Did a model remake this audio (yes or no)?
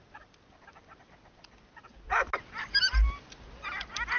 no